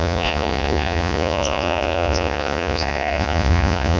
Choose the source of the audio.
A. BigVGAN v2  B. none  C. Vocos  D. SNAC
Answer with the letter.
C